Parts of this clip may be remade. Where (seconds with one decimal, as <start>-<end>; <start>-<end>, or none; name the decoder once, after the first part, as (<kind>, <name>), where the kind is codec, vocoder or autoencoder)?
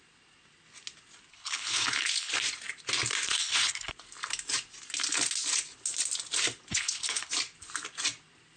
1.3-2.3 (codec, HILCodec); 3.3-3.9; 6.7-7.3